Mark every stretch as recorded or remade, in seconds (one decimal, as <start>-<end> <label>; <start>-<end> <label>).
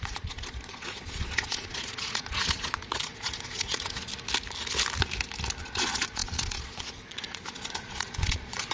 0.0-4.1 remade; 4.1-5.6 recorded; 5.6-8.7 remade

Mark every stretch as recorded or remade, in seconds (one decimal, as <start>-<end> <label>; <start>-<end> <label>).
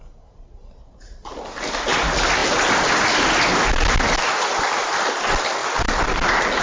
0.0-6.6 recorded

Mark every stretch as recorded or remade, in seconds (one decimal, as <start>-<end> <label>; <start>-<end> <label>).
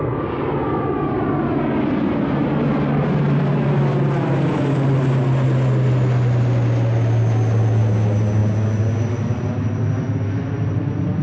0.0-11.2 recorded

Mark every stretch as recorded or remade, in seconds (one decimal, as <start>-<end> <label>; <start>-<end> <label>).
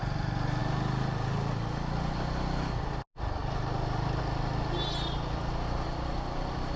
0.0-6.8 recorded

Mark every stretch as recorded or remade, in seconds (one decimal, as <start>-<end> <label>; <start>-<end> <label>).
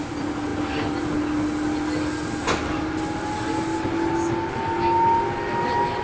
0.0-6.0 recorded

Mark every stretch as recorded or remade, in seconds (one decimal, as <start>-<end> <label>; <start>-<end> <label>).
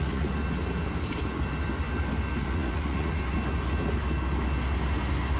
0.0-0.4 remade; 0.4-2.4 recorded; 2.4-3.2 remade; 3.2-5.4 recorded